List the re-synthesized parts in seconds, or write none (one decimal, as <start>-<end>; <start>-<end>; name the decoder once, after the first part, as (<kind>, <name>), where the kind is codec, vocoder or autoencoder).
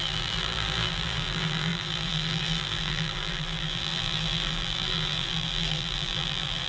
0.0-6.7 (vocoder, BigVGAN v2)